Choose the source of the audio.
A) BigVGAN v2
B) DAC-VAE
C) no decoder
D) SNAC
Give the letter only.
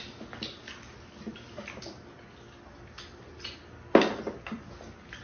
C